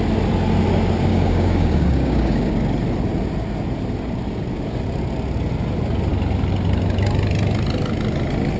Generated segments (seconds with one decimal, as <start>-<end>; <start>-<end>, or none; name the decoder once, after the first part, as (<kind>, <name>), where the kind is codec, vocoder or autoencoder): 1.1-2.5 (codec, DAC)